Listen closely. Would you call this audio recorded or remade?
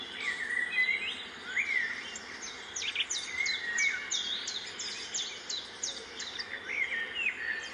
recorded